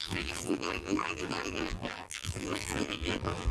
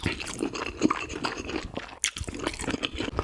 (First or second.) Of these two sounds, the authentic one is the second